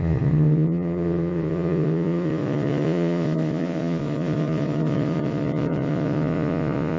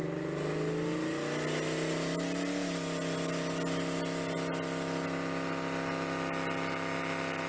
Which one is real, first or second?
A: second